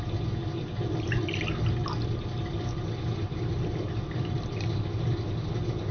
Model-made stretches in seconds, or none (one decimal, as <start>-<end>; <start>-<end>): none